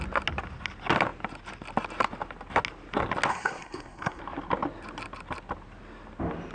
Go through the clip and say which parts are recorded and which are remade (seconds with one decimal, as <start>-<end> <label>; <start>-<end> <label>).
0.0-3.3 recorded; 3.3-4.2 remade; 4.2-6.5 recorded